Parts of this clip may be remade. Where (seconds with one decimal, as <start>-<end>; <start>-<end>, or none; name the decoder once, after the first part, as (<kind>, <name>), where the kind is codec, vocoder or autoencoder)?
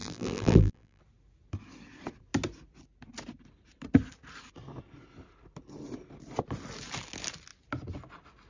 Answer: 0.0-1.0 (vocoder, BigVGAN v2)